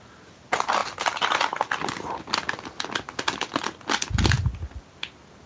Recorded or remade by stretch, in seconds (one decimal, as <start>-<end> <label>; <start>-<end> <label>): 0.0-5.5 recorded